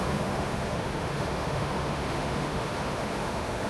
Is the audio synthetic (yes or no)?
yes